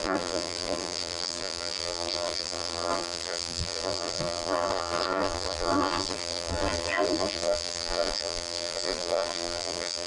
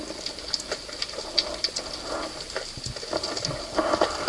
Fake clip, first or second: first